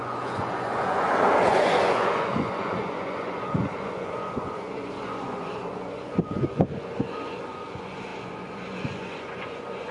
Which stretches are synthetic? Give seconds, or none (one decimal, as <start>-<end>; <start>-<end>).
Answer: 0.0-9.9